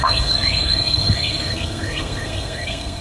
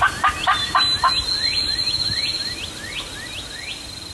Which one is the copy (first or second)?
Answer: first